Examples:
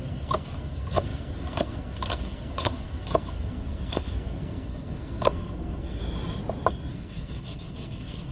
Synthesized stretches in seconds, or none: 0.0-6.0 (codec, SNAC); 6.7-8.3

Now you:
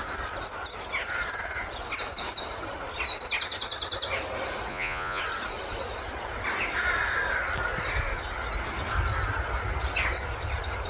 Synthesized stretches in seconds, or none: 4.7-5.2 (vocoder, Vocos)